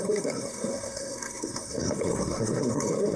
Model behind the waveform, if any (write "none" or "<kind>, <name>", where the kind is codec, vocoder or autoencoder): codec, SNAC